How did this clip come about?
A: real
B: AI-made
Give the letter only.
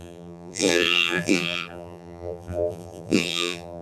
B